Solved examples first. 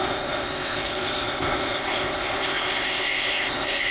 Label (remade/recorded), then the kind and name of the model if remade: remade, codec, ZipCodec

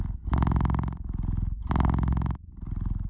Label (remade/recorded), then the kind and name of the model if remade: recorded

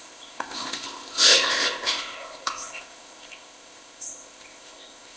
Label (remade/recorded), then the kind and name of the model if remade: remade, codec, ZipCodec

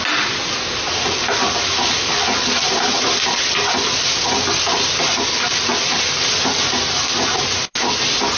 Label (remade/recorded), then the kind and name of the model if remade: recorded